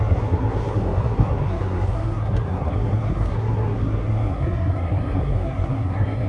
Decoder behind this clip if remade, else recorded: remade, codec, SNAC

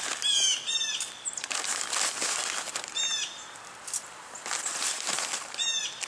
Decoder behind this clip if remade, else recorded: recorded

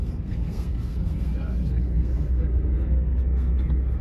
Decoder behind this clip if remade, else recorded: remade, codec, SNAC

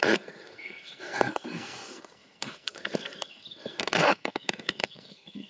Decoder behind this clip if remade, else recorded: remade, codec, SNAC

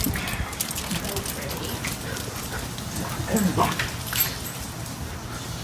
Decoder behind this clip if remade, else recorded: recorded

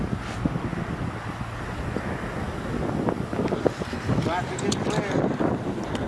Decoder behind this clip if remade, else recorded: recorded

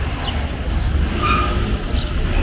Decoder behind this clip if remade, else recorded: recorded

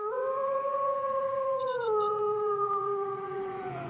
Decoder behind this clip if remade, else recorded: remade, vocoder, Vocos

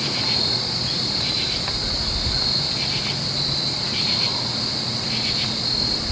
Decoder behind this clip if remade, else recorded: recorded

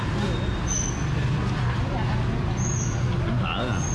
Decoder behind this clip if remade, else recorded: recorded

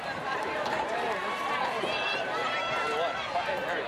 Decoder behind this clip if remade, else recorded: remade, vocoder, BigVGAN v2